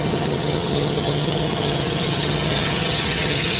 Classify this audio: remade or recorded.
remade